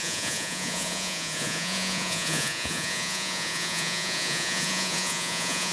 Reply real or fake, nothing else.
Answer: fake